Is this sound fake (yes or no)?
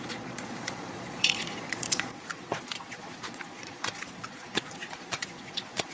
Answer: yes